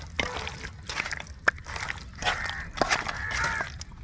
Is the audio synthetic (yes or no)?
no